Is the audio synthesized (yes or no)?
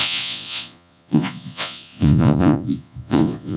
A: yes